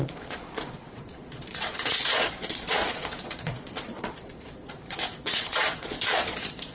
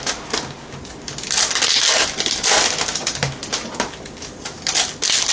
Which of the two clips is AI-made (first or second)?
first